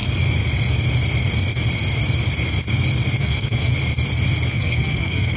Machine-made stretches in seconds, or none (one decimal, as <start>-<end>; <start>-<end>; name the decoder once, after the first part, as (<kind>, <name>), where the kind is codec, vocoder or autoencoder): 3.2-3.7 (codec, SNAC); 4.5-5.4